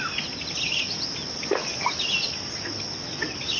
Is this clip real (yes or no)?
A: yes